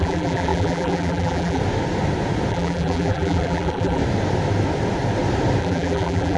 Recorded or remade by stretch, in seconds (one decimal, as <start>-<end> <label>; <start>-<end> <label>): 0.0-1.6 remade; 1.6-2.5 recorded; 2.5-4.0 remade; 4.0-5.6 recorded; 5.6-6.4 remade